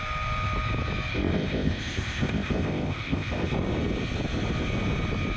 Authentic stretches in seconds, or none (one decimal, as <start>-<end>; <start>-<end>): 0.0-1.1; 3.5-5.4